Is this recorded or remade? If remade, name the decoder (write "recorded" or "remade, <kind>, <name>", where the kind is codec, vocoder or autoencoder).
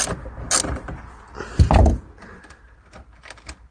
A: recorded